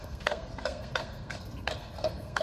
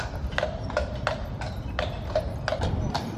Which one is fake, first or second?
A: first